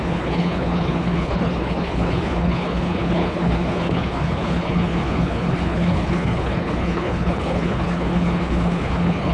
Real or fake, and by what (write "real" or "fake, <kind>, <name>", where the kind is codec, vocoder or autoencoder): fake, codec, HILCodec